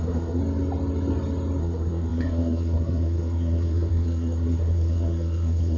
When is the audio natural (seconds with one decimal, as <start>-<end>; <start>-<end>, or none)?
0.4-1.6